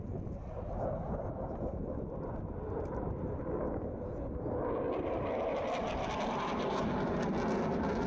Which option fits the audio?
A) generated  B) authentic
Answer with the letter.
B